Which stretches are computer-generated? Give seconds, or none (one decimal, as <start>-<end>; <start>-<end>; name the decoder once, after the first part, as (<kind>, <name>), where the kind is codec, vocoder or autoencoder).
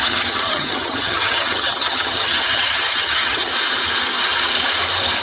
0.0-3.5 (vocoder, HiFi-GAN)